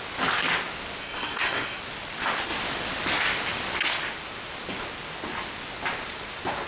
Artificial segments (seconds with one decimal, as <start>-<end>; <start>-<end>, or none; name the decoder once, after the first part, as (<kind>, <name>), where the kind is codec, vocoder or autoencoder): 1.0-1.8 (codec, SNAC)